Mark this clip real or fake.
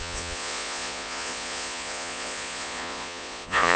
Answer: fake